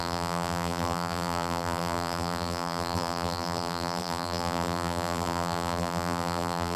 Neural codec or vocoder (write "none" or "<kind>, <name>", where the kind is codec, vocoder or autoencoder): vocoder, BigVGAN v2